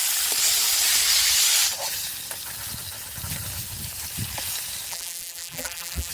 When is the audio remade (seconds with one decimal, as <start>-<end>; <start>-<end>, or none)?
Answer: 4.9-6.1

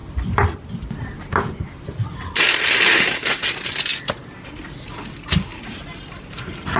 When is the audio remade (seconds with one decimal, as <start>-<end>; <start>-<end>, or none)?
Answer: 5.5-6.8

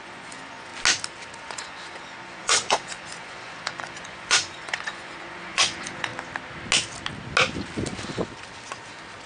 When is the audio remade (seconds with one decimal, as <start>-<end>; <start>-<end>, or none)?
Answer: 0.0-0.7; 1.4-6.1

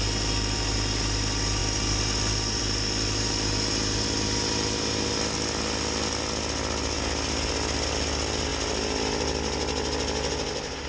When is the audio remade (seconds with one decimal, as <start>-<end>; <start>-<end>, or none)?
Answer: none

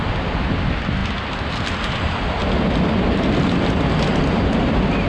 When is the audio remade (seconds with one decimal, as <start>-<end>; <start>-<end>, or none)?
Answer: none

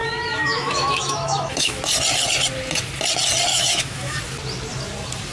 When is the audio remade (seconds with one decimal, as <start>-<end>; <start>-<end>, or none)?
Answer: 0.0-1.8; 3.5-4.2

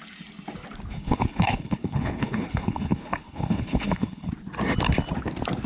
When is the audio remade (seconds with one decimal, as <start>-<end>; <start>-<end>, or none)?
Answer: 0.9-4.3